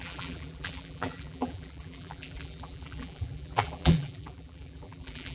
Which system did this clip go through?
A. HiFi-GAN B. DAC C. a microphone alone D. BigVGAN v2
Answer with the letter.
D